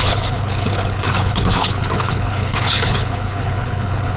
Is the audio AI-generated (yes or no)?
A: yes